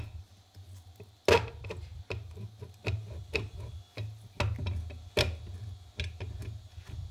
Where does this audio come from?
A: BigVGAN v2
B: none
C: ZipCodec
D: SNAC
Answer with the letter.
B